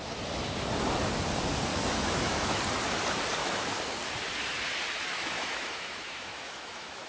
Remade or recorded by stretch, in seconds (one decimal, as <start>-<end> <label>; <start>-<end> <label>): 0.0-1.7 recorded; 1.7-2.6 remade; 2.6-3.4 recorded; 3.4-4.0 remade; 4.0-5.1 recorded; 5.1-7.1 remade